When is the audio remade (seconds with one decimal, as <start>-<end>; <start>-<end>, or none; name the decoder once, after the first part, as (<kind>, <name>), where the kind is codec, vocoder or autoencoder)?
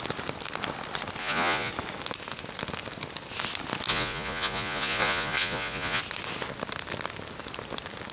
1.2-1.7 (vocoder, Vocos); 3.9-6.0